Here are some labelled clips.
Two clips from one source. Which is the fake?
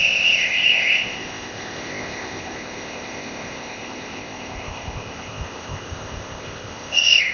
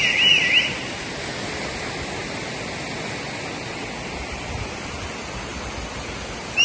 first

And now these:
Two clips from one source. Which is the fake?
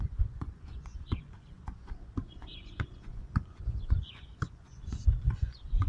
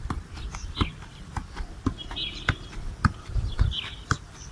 first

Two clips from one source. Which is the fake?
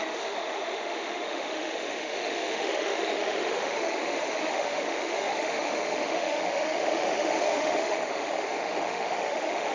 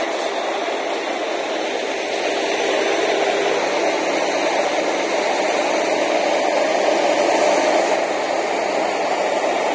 first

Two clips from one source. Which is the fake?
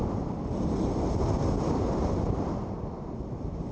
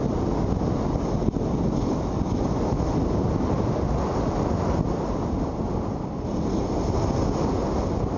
first